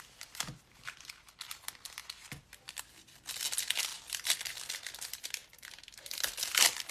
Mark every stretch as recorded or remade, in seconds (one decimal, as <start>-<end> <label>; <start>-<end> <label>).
0.0-2.0 recorded; 2.0-3.2 remade; 3.2-3.9 recorded; 3.9-4.4 remade; 4.4-6.9 recorded